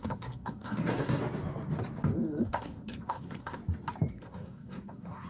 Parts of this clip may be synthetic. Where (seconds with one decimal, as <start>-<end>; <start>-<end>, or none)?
0.0-1.2; 2.4-3.6; 4.1-5.3